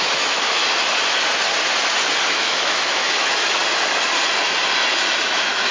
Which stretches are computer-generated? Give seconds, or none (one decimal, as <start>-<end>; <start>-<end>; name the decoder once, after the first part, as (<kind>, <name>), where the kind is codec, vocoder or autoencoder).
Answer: 0.0-0.6 (autoencoder, DAC-VAE); 2.2-3.6; 5.2-5.7